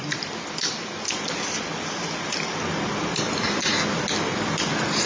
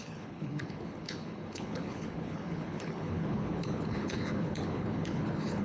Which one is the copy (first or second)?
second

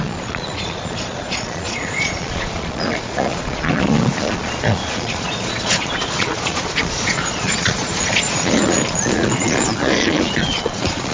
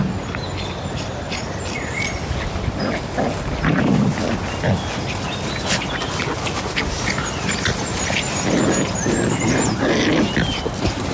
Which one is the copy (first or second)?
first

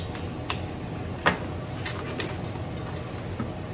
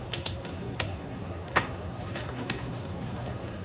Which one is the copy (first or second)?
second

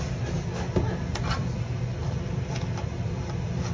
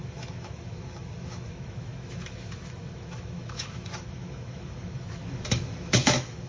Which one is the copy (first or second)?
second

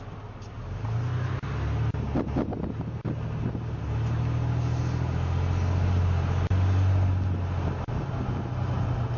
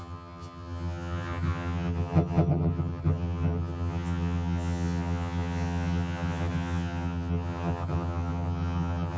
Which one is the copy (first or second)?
second